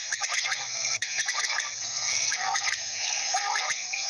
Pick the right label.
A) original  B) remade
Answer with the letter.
B